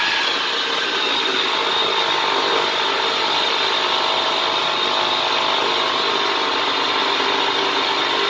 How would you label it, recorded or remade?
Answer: recorded